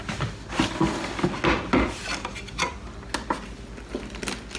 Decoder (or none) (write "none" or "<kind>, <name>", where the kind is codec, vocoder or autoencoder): none